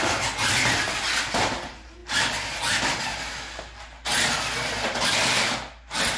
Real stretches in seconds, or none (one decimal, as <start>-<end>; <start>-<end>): 0.0-6.2